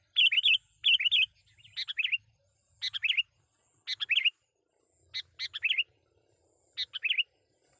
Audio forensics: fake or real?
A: real